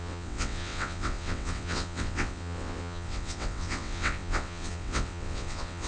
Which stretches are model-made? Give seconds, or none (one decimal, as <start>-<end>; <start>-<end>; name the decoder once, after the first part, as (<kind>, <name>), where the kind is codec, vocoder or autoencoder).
0.0-5.9 (vocoder, WaveNeXt)